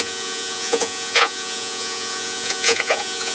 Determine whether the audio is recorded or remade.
remade